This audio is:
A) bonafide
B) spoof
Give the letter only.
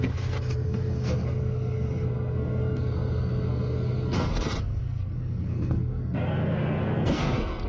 B